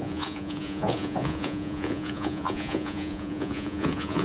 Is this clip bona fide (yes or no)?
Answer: no